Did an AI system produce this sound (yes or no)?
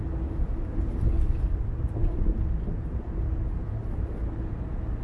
no